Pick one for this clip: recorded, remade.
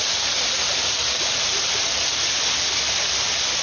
recorded